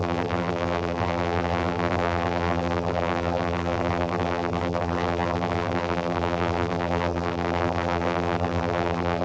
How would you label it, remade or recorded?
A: remade